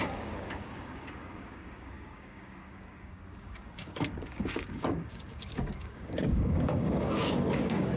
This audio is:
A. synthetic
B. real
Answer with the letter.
A